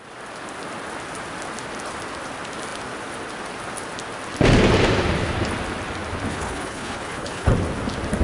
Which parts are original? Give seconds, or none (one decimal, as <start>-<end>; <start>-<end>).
0.0-6.3; 7.5-8.2

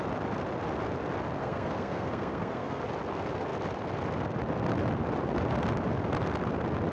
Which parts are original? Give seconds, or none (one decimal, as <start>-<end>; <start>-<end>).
0.0-1.4; 2.8-6.9

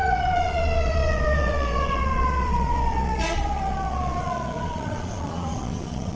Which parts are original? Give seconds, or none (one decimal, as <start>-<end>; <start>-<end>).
none

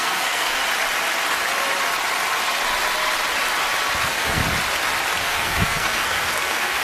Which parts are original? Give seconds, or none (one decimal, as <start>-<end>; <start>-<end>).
0.6-4.0; 4.4-5.2

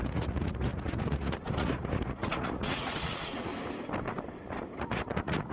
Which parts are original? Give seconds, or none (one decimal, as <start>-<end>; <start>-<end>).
3.5-4.8

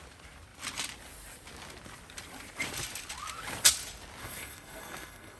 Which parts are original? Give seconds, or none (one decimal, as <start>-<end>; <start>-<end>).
0.0-4.2

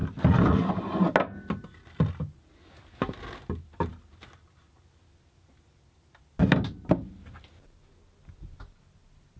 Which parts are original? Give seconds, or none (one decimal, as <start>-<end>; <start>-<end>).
0.0-9.4